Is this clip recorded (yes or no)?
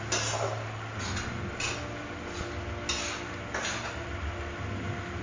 yes